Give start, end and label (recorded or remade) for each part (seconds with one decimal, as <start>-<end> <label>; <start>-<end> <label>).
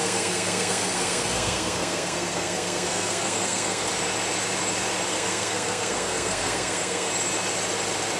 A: 0.0-3.9 remade; 3.9-5.1 recorded; 5.1-7.1 remade; 7.1-8.2 recorded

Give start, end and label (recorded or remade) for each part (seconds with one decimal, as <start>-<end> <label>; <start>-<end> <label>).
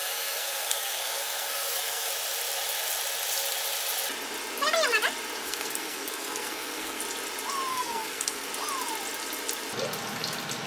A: 0.0-2.1 remade; 2.1-5.4 recorded; 5.4-7.0 remade; 7.0-7.7 recorded; 7.7-8.5 remade; 8.5-10.7 recorded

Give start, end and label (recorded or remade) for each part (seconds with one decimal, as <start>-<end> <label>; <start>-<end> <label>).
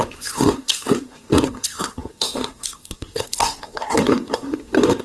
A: 0.0-5.0 remade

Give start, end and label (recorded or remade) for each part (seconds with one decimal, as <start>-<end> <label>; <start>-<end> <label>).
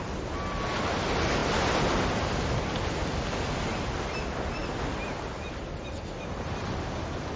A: 0.0-7.4 recorded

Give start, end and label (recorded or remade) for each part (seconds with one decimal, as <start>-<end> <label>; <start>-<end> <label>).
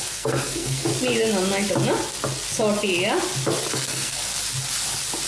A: 0.0-0.9 remade; 0.9-3.7 recorded; 3.7-4.3 remade; 4.3-5.3 recorded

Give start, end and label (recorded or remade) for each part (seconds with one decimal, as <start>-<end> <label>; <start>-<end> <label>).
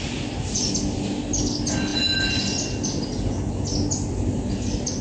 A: 0.0-5.0 recorded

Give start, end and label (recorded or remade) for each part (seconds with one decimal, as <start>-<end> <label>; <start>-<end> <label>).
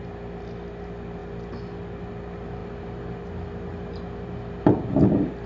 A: 0.0-5.5 recorded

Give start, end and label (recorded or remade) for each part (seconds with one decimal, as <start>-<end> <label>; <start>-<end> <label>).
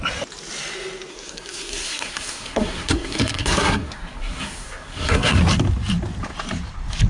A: 0.0-1.1 recorded; 1.1-5.4 remade; 5.4-7.1 recorded